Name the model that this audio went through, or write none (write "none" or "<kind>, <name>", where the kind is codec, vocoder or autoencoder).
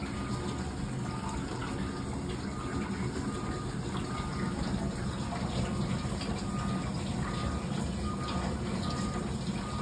none